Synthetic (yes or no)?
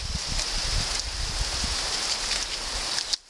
no